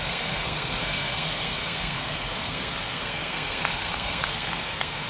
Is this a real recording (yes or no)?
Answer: no